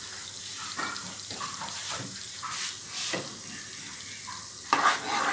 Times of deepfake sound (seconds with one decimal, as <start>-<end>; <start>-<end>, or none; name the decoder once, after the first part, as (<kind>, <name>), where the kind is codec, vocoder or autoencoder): 0.4-2.4 (vocoder, BigVGAN v2)